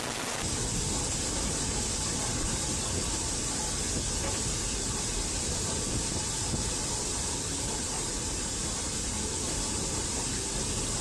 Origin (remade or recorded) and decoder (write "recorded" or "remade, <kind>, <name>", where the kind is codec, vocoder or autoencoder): recorded